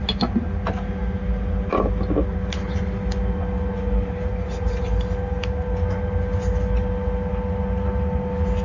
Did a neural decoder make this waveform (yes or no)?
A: no